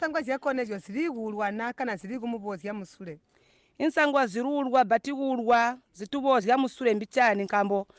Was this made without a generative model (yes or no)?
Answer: yes